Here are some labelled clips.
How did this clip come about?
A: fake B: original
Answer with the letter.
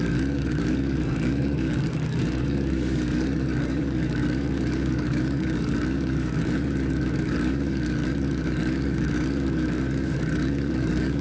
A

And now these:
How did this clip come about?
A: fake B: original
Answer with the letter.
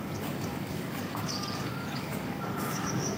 A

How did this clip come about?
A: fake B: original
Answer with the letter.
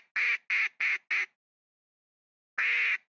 B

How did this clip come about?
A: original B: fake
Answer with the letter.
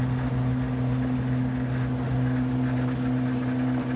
A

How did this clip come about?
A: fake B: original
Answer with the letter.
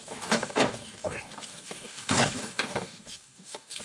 A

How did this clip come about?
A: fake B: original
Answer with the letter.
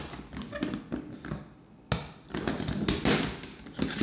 B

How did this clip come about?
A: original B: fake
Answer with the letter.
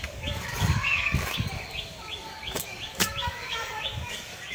B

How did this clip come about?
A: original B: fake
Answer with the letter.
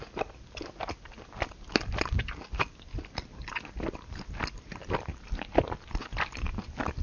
A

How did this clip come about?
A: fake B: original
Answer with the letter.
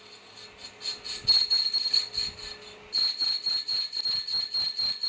B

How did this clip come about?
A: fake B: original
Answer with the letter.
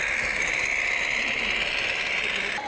B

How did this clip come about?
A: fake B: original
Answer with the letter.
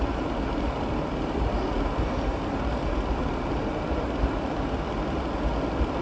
B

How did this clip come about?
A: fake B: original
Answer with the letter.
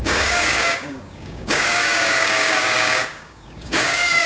A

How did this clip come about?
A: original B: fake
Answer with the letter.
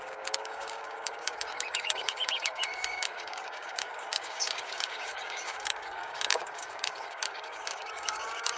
B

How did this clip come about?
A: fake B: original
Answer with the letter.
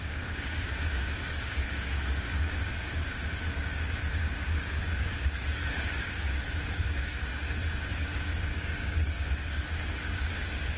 A